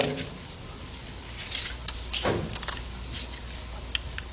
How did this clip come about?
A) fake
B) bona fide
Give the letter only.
B